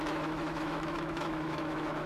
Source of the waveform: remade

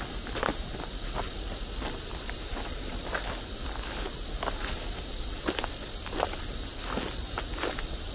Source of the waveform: recorded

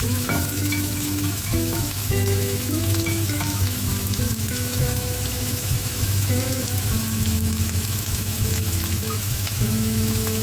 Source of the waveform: remade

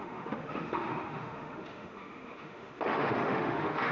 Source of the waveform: remade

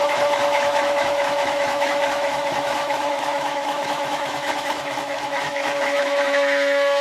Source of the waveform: remade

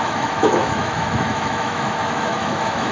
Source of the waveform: remade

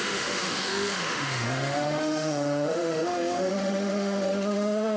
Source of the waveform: remade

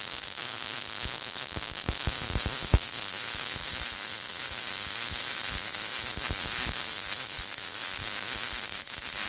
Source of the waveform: remade